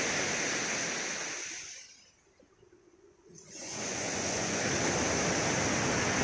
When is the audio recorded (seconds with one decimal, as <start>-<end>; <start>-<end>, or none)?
0.0-2.9; 4.6-6.2